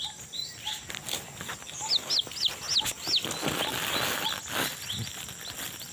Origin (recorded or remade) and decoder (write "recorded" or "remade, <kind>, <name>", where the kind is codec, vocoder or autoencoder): recorded